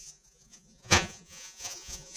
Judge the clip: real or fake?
fake